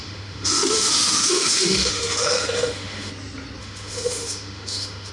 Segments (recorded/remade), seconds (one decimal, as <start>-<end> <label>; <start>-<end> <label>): 0.0-3.1 remade; 3.1-3.6 recorded; 3.6-5.1 remade